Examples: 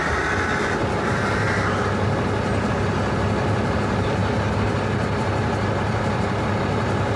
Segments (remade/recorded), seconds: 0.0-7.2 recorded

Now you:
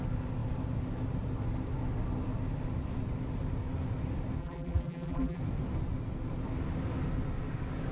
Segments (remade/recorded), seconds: 0.0-4.4 recorded; 4.4-5.4 remade; 5.4-7.9 recorded

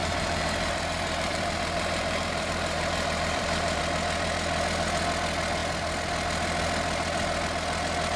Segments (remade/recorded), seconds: 0.0-3.8 remade; 3.8-8.2 recorded

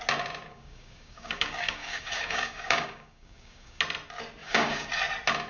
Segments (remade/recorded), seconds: 0.0-0.5 recorded; 0.5-3.8 remade; 3.8-4.4 recorded; 4.4-4.9 remade; 4.9-5.5 recorded